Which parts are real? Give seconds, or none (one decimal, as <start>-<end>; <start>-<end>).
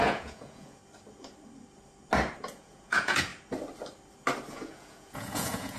0.8-2.5; 3.3-4.5